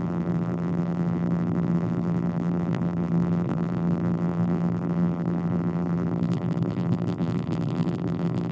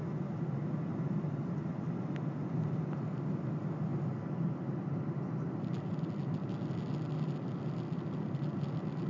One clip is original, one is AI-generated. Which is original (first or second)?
second